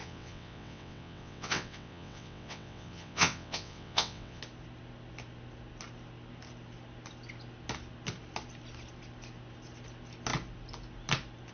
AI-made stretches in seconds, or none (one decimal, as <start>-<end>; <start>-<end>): 0.0-4.4